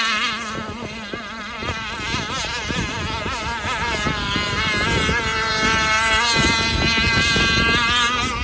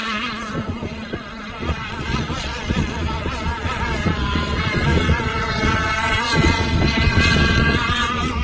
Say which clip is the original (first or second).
first